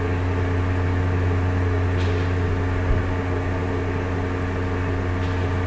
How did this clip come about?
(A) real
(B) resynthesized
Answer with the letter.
A